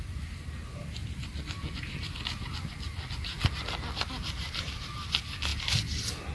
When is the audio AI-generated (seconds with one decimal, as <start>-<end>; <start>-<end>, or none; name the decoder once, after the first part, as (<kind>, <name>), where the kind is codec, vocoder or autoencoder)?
none